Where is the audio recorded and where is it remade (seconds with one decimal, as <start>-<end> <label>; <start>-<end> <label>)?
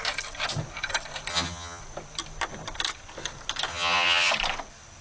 0.0-1.3 recorded; 1.3-1.8 remade; 1.8-3.7 recorded; 3.7-4.3 remade; 4.3-5.0 recorded